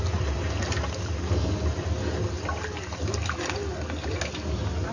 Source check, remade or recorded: recorded